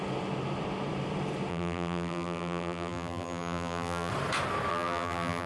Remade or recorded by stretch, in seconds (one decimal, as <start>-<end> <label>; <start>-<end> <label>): 0.0-1.5 recorded; 1.5-4.1 remade; 4.1-4.7 recorded; 4.7-5.5 remade

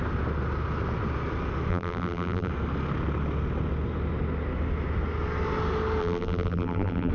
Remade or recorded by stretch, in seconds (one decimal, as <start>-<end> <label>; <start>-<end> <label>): 0.0-1.7 recorded; 1.7-2.5 remade; 2.5-6.0 recorded; 6.0-7.1 remade

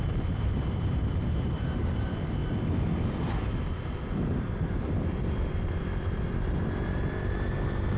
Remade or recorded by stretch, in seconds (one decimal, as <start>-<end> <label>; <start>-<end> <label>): 0.0-2.4 remade; 2.4-3.1 recorded; 3.1-8.0 remade

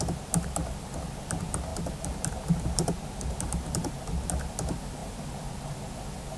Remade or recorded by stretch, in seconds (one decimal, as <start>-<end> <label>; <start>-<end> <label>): 0.0-6.4 recorded